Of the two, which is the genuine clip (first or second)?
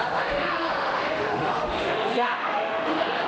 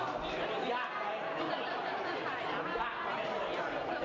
second